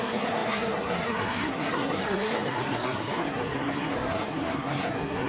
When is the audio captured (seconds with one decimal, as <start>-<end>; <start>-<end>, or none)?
none